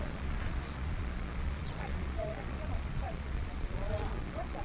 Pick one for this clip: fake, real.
fake